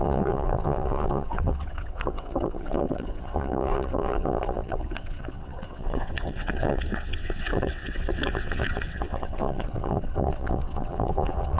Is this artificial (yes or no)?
yes